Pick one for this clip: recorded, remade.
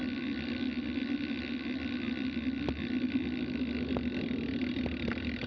recorded